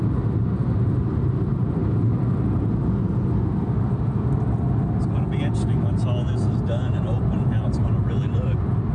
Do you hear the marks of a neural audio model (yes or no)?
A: no